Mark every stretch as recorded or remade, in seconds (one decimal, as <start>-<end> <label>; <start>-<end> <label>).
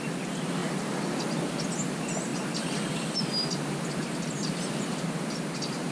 0.0-5.9 recorded